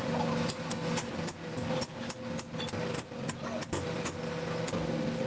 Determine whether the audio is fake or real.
real